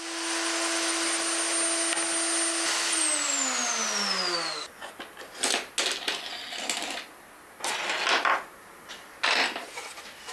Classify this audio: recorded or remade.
recorded